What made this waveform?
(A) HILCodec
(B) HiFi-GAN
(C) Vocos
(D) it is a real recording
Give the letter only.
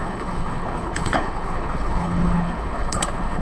A